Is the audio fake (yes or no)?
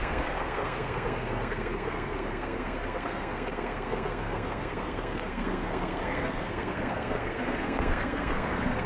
yes